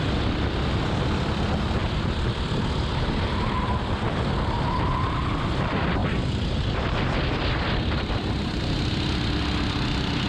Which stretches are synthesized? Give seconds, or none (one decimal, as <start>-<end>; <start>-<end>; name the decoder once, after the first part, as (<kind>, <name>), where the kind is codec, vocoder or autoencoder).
1.8-3.8 (vocoder, BigVGAN v2); 6.0-8.6

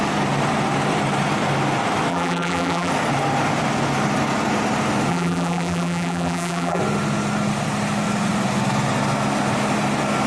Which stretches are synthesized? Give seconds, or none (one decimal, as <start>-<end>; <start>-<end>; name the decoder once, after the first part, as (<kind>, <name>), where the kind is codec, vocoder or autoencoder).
2.1-2.9 (vocoder, BigVGAN v2); 5.1-6.8

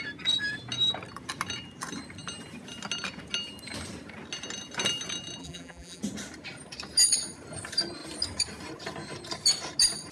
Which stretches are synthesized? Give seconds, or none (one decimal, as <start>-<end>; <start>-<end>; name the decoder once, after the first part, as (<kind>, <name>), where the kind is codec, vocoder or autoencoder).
5.4-6.0 (vocoder, BigVGAN v2)

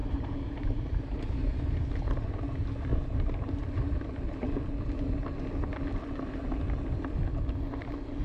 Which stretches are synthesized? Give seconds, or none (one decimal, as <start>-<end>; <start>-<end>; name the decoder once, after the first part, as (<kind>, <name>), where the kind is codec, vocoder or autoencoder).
0.0-2.3 (vocoder, BigVGAN v2); 2.9-3.5

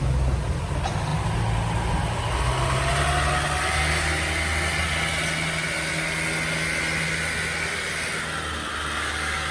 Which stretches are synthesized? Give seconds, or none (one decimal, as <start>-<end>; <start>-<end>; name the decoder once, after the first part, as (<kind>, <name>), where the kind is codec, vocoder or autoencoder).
none

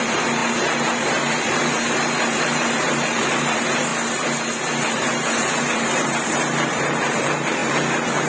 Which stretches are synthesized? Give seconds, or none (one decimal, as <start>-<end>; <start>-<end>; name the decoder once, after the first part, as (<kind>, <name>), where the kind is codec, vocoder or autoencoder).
0.0-3.9 (vocoder, BigVGAN v2); 4.9-8.3

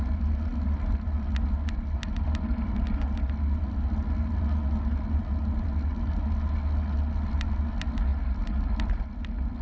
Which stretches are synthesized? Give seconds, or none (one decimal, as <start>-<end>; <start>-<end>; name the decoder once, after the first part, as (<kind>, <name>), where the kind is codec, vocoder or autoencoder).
8.1-9.1 (vocoder, BigVGAN v2)